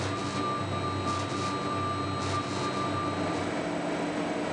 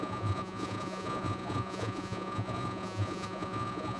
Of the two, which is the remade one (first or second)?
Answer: second